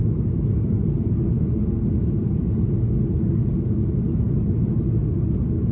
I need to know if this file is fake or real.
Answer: real